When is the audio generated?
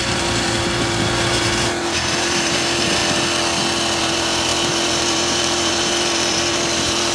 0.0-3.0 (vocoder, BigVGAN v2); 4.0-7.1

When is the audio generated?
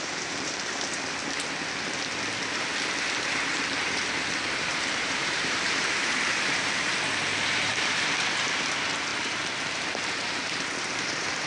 0.0-1.2 (vocoder, BigVGAN v2); 4.4-6.9; 7.7-11.5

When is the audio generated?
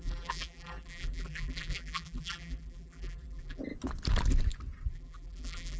0.0-3.6 (vocoder, BigVGAN v2); 4.9-5.8